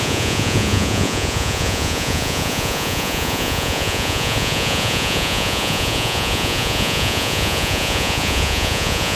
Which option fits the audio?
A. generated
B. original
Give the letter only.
A